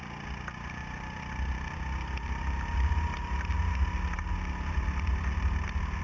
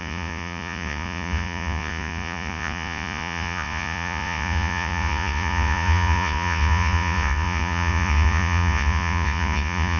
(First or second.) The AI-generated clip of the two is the second